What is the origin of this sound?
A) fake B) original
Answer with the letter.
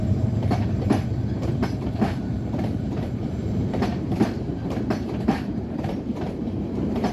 A